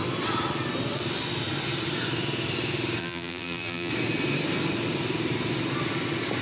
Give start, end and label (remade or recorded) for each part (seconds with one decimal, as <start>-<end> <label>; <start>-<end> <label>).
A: 0.0-3.0 recorded; 3.0-3.9 remade; 3.9-6.4 recorded